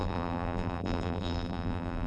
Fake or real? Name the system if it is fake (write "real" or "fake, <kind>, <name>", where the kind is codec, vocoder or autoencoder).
fake, vocoder, BigVGAN v2